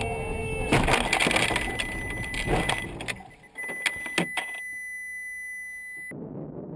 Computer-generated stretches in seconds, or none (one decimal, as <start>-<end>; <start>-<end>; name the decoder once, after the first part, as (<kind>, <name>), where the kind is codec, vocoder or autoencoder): none

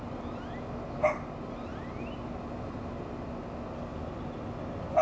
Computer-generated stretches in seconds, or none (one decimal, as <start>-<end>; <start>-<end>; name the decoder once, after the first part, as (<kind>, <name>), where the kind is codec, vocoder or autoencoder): none

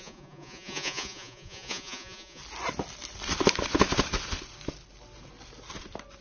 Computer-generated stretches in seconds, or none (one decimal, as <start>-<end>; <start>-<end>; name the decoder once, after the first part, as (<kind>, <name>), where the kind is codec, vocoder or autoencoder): 0.0-2.4 (vocoder, Vocos)